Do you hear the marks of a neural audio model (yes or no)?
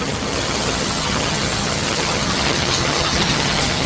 yes